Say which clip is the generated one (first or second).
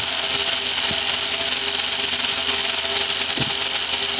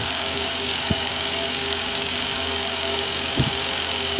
second